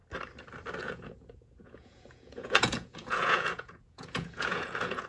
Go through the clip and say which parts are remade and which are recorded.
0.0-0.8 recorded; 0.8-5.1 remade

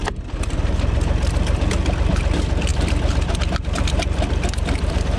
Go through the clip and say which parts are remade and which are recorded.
0.0-5.2 recorded

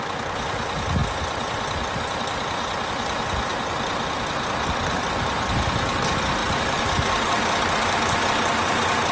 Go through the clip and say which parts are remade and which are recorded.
0.0-6.4 recorded; 6.4-8.2 remade; 8.2-9.1 recorded

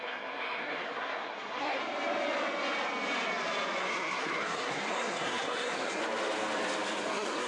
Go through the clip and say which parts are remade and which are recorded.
0.0-1.8 remade; 1.8-3.8 recorded; 3.8-6.0 remade; 6.0-7.1 recorded; 7.1-7.5 remade

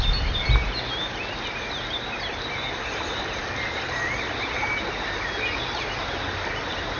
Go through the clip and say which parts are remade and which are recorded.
0.0-7.0 recorded

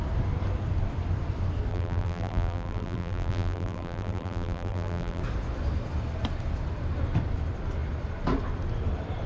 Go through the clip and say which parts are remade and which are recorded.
0.0-1.7 recorded; 1.7-5.2 remade; 5.2-9.3 recorded

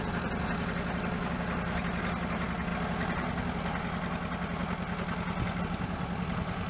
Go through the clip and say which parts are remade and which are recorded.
0.0-6.7 recorded

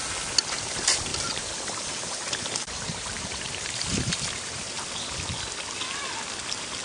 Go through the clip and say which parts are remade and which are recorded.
0.0-1.1 recorded; 1.1-5.2 remade; 5.2-6.8 recorded